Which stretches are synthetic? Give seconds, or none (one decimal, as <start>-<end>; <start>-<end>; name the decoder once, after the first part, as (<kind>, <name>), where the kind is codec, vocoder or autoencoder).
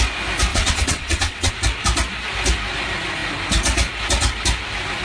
0.5-1.5 (vocoder, WaveNeXt)